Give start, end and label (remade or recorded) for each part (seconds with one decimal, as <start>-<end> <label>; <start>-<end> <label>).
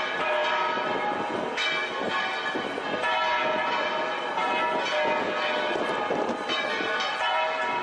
0.0-7.8 recorded